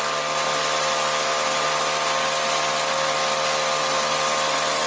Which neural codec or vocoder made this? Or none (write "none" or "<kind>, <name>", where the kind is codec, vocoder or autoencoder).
none